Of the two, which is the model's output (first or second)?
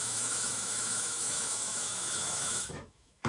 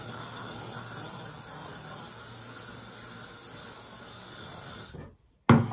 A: first